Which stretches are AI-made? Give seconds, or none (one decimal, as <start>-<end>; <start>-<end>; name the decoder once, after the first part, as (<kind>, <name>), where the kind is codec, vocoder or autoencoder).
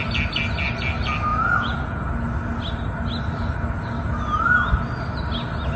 1.3-2.1 (vocoder, Vocos)